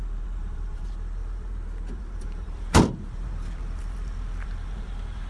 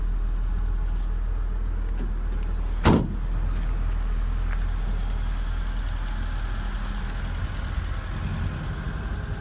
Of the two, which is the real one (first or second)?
second